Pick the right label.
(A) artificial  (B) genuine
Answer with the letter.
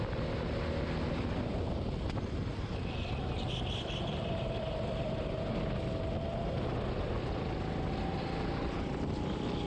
B